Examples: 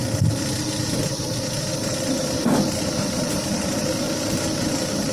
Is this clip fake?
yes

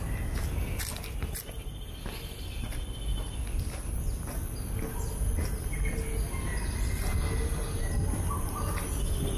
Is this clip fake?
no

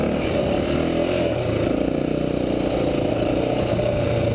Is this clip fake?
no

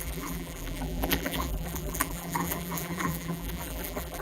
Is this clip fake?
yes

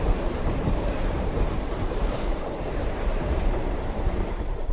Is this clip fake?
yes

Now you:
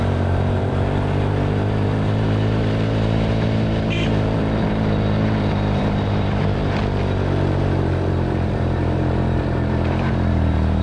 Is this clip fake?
yes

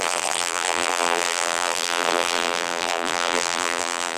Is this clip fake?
yes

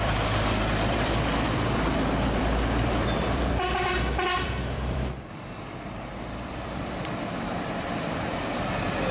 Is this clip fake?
yes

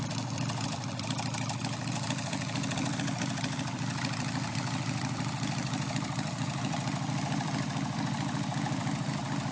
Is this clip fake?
yes